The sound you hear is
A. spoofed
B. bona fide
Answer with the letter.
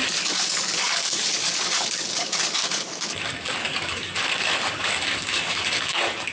A